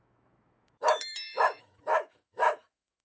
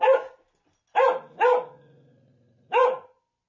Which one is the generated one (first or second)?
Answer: first